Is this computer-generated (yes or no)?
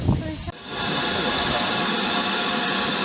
no